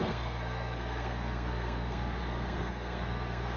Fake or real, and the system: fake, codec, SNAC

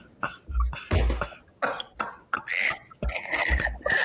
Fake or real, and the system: real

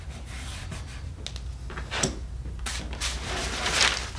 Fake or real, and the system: real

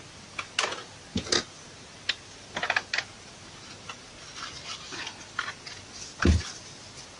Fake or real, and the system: real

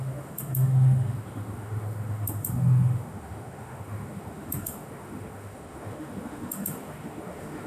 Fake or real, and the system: fake, autoencoder, DAC-VAE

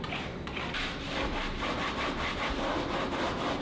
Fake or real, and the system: real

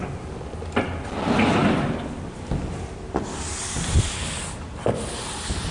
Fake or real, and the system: real